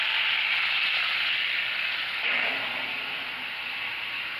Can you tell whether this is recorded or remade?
recorded